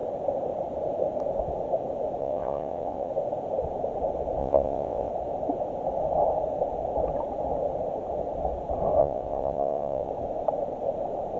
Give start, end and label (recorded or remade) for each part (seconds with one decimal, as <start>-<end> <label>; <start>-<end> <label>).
0.0-2.2 recorded; 2.2-3.1 remade; 3.1-4.4 recorded; 4.4-5.1 remade; 5.1-9.0 recorded; 9.0-10.1 remade; 10.1-11.4 recorded